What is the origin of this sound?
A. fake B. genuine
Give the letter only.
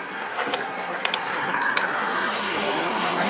A